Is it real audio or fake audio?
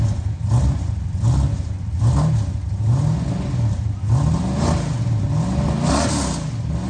real